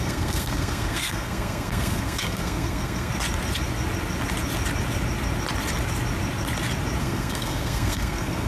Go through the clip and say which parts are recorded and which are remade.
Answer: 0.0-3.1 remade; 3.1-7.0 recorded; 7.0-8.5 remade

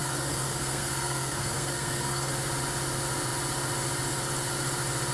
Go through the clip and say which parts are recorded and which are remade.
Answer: 0.0-2.3 remade; 2.3-5.1 recorded

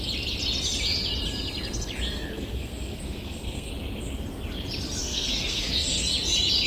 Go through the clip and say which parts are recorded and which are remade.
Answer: 0.0-2.1 recorded; 2.1-3.7 remade; 3.7-5.0 recorded; 5.0-6.1 remade; 6.1-6.7 recorded

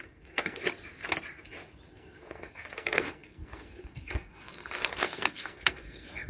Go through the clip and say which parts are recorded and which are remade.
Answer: 0.0-0.6 remade; 0.6-1.9 recorded; 1.9-6.3 remade

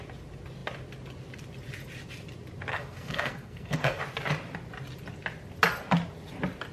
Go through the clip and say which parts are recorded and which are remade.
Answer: 0.0-2.7 recorded; 2.7-4.0 remade; 4.0-6.7 recorded

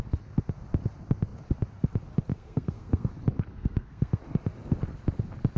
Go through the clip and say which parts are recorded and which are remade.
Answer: 0.0-2.3 recorded; 2.3-3.1 remade; 3.1-3.5 recorded; 3.5-4.2 remade; 4.2-5.6 recorded